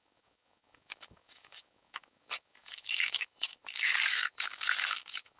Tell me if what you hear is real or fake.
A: fake